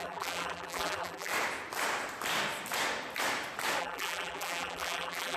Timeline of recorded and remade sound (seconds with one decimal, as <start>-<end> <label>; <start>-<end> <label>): 0.0-1.3 remade; 1.3-3.8 recorded; 3.8-5.4 remade